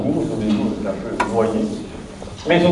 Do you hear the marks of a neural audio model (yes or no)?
no